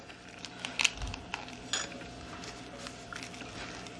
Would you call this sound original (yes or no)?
yes